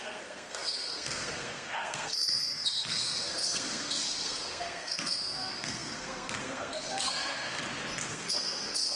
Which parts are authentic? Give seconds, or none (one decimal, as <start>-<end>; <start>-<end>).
7.6-8.1